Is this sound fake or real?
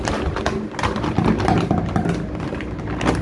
real